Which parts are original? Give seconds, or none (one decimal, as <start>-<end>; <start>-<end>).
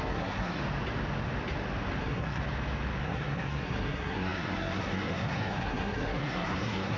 0.6-2.0; 2.4-3.0